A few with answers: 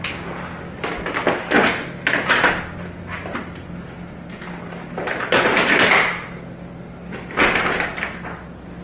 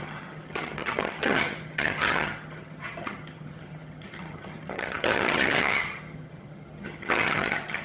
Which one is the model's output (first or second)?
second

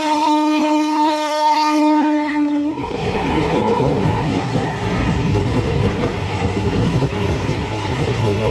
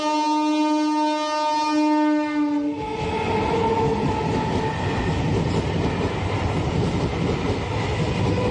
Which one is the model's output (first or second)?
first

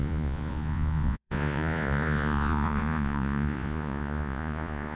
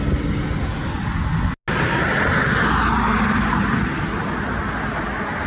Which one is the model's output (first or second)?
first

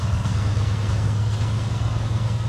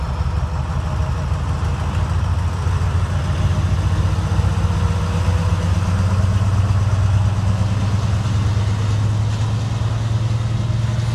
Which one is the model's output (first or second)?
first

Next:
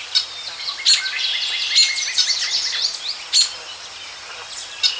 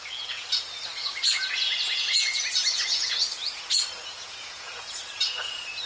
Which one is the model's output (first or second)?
second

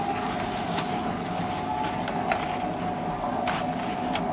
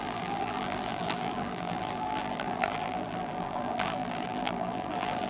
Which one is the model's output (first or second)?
second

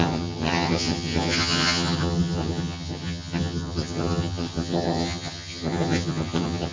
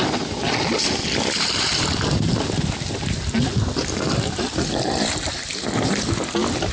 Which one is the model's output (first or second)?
first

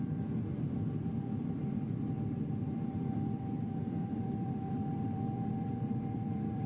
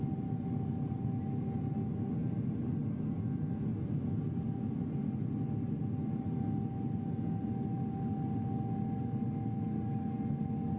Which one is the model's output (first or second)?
first